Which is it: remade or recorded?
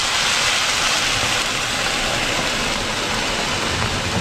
recorded